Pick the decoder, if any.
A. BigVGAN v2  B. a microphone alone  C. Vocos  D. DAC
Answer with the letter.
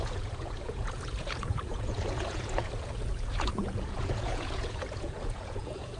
C